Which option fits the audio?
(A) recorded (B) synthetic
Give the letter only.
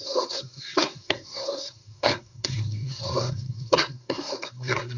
B